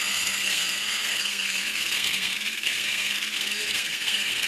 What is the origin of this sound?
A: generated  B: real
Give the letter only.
A